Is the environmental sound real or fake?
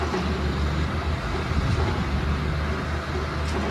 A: real